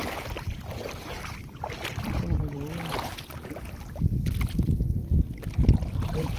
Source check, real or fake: real